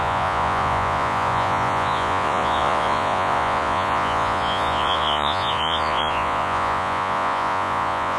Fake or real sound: fake